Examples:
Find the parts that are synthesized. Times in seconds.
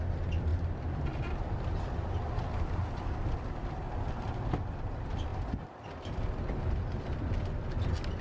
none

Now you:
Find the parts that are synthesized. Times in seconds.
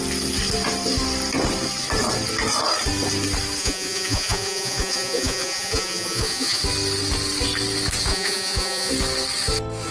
3.6-6.6 (vocoder, Vocos); 8.1-8.9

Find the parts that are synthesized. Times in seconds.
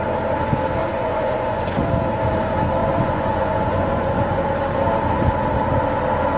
0.8-1.6 (vocoder, Vocos); 2.8-4.4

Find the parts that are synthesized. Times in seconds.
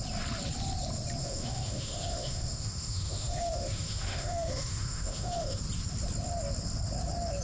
1.2-5.6 (autoencoder, DAC-VAE)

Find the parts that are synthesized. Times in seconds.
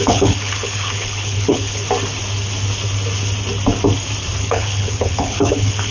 0.0-1.8 (codec, HILCodec); 4.4-5.9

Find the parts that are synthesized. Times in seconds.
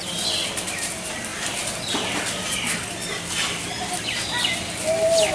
none